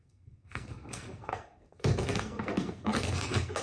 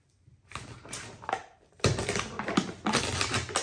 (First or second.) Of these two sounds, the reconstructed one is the first